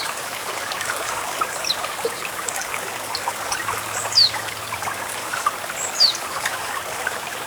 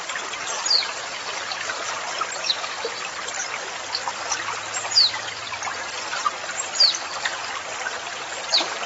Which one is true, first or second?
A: second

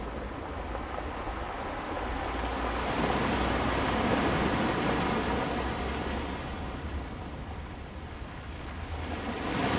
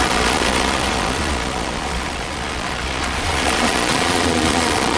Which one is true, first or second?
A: first